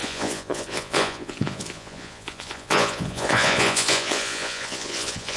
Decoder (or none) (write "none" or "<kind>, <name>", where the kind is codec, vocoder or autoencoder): vocoder, Vocos